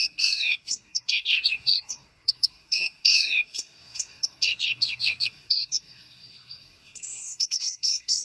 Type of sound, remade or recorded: remade